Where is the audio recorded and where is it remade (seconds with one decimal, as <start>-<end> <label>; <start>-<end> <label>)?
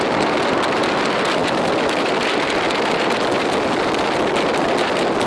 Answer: 0.0-5.3 recorded